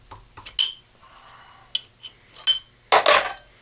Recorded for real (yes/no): yes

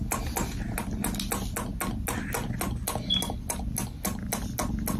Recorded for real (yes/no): yes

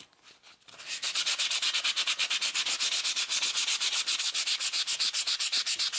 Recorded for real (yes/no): yes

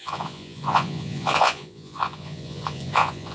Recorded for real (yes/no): no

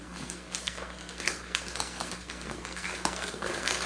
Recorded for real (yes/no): no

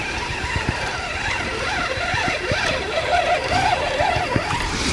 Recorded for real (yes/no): no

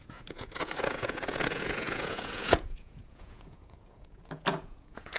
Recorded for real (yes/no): no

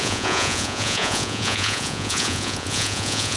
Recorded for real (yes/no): no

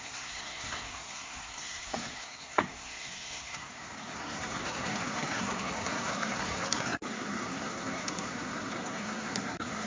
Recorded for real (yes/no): no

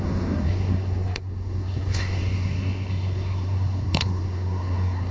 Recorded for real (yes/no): no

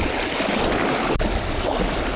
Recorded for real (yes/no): yes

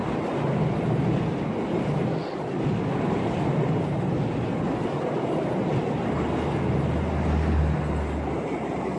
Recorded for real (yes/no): yes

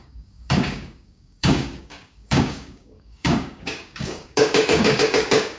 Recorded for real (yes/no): no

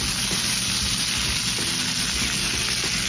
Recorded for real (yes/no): yes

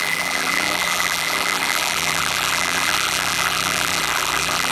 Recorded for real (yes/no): no